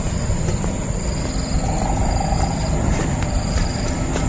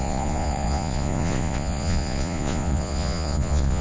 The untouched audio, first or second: first